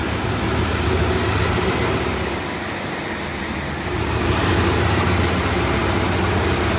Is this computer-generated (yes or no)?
no